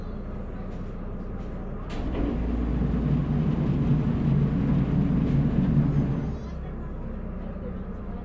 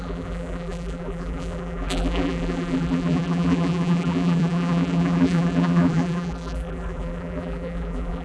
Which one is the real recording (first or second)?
first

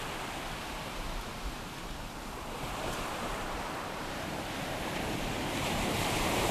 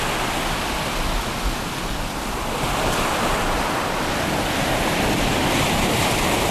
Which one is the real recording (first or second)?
second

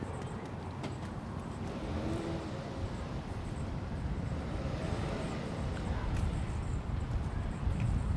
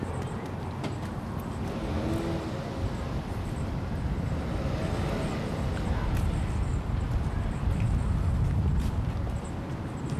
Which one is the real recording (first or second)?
second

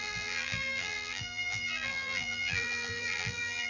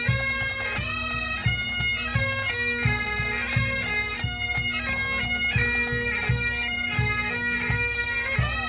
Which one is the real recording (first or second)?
second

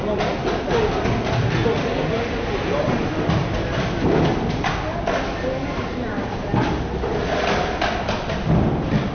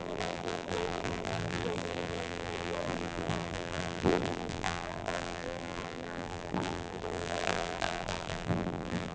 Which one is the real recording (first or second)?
first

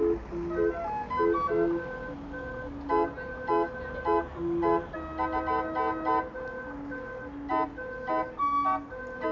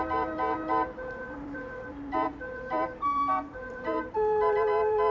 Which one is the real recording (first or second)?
first